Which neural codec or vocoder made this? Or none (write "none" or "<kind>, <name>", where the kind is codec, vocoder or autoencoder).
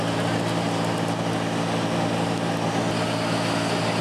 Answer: none